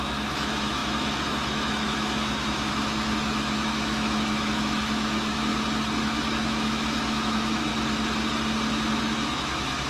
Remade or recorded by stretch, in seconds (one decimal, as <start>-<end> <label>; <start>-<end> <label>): 0.0-5.5 remade; 5.5-6.0 recorded; 6.0-7.7 remade; 7.7-9.0 recorded; 9.0-9.9 remade